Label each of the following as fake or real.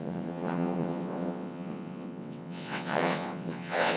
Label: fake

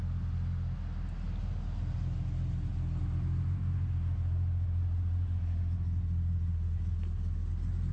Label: real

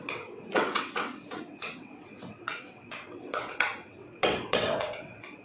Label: fake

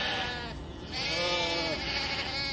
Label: real